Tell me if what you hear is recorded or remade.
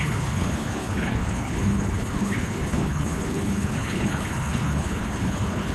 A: remade